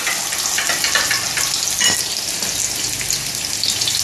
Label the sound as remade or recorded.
recorded